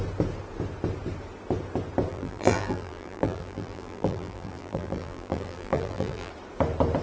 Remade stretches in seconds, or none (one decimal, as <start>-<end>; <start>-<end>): 2.1-6.3